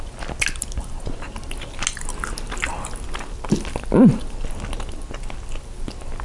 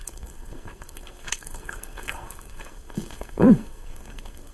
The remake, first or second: second